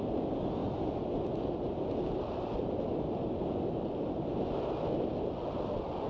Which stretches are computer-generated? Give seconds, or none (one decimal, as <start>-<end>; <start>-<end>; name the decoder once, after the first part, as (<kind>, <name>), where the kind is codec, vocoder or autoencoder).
none